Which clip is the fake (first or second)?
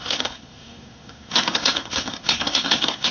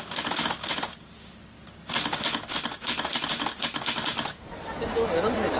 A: first